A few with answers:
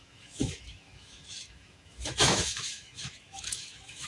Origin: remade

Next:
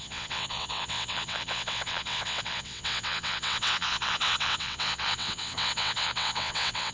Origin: remade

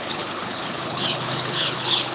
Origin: remade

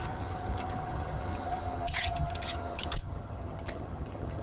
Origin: remade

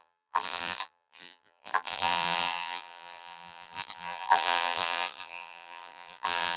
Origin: remade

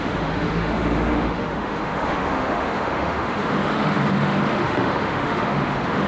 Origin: remade